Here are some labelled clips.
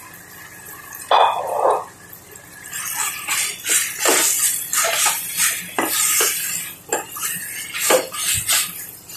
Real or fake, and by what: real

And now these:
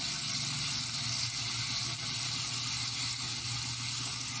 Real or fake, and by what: real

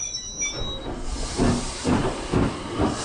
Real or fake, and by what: real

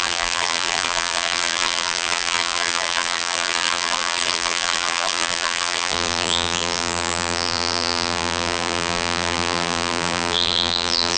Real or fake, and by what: fake, vocoder, BigVGAN v2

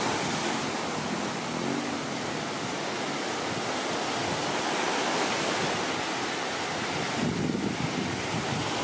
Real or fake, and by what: real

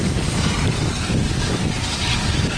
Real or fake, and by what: real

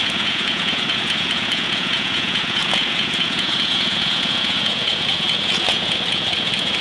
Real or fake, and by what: fake, vocoder, Vocos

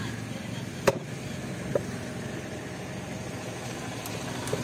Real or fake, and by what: real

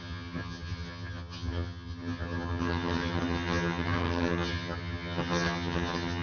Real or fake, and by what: fake, vocoder, HiFi-GAN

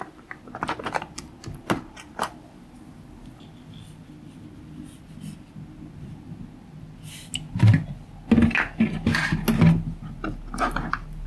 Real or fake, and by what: real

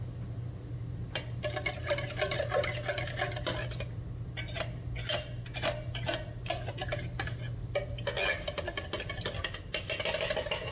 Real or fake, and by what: real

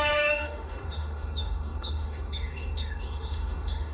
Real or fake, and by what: fake, autoencoder, DAC-VAE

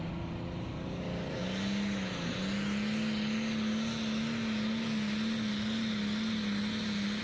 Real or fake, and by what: real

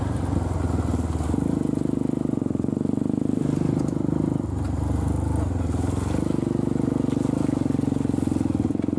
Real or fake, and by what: real